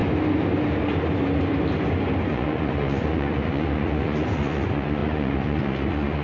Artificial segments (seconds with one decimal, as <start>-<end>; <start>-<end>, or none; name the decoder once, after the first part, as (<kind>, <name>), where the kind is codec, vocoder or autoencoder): 2.3-6.2 (vocoder, Vocos)